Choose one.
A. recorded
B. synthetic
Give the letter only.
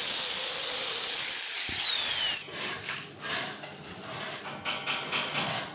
A